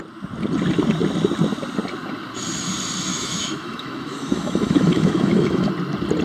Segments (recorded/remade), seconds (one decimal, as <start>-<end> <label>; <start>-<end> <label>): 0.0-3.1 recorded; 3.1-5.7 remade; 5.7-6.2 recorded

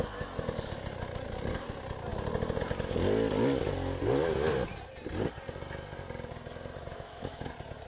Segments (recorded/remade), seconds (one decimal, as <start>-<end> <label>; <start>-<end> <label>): 0.0-6.9 recorded; 6.9-7.5 remade; 7.5-7.9 recorded

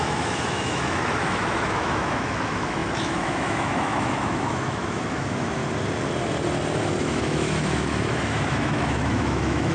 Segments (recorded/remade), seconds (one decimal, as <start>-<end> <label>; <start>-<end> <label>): 0.0-5.6 remade; 5.6-7.0 recorded; 7.0-9.7 remade